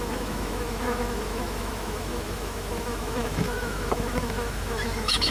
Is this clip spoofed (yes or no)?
yes